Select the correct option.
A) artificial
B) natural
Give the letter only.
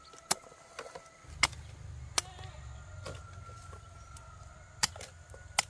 B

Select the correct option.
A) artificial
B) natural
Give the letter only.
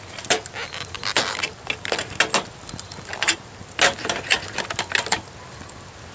B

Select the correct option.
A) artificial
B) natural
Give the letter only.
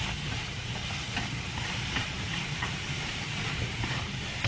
A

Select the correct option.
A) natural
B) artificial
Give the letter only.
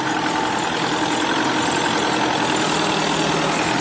A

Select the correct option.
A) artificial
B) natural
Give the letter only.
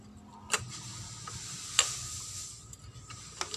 B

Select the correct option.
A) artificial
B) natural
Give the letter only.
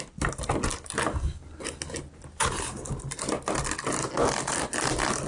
B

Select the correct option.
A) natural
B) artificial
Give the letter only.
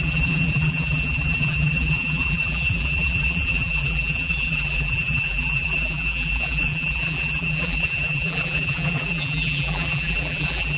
B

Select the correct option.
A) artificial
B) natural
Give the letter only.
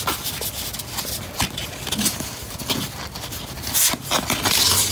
B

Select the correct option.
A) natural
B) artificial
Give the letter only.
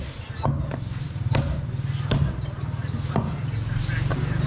A